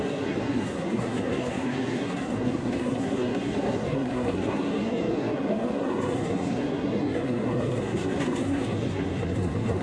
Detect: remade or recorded remade